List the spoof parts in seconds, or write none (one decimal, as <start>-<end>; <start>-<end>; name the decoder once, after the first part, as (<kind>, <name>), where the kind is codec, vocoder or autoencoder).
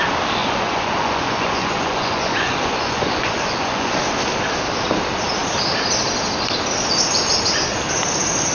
0.4-3.9 (vocoder, Vocos)